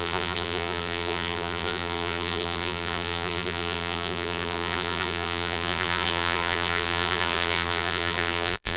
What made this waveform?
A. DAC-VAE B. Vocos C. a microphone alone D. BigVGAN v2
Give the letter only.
D